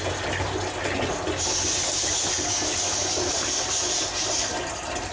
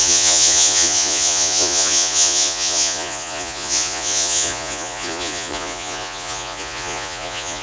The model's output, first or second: second